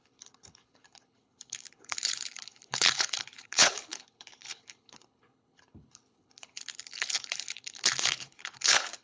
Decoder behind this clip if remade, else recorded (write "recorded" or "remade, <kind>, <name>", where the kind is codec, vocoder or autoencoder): remade, codec, HILCodec